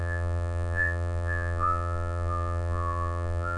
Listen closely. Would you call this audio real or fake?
fake